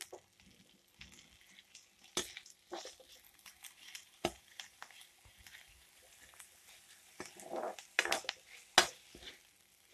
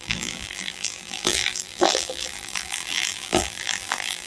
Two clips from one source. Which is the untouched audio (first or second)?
first